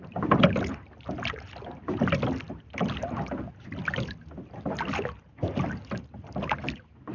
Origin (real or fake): real